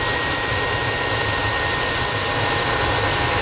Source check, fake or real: real